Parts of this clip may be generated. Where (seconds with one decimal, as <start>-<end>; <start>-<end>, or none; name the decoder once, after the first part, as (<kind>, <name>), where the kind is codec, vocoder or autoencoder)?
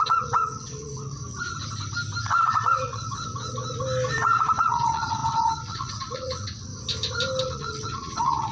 0.0-1.2 (vocoder, WaveNeXt); 2.2-3.3; 4.1-6.7; 7.4-8.5